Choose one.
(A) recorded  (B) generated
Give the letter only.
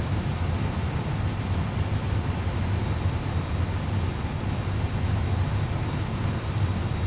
A